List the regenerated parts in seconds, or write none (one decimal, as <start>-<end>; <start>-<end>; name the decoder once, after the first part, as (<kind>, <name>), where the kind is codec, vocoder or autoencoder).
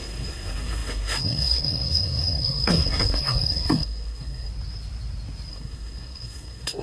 0.0-4.5 (codec, SNAC); 5.5-6.8